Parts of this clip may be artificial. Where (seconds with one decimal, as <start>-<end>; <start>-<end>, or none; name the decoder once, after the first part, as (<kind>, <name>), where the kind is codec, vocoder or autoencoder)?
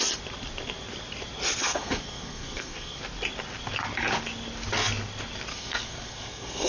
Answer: 1.6-3.0 (codec, SNAC); 5.5-6.7